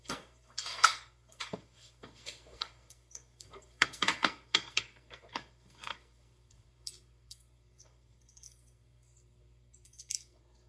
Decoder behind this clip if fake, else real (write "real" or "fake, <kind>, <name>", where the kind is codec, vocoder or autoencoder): fake, codec, SNAC